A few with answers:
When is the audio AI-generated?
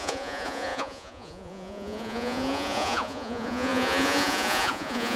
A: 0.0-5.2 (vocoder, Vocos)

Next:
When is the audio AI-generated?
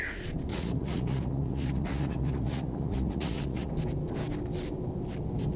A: 0.5-3.7 (vocoder, Vocos)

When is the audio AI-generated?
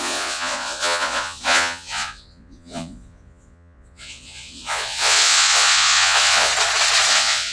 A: 0.0-6.5 (vocoder, Vocos); 7.1-7.5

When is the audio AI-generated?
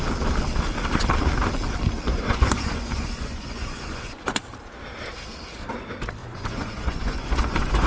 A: 2.1-4.4 (vocoder, Vocos); 6.2-7.9